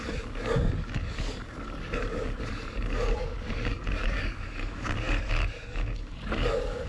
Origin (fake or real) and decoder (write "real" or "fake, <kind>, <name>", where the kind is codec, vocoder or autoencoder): fake, codec, DAC